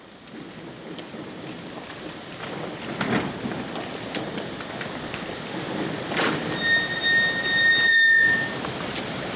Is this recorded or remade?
recorded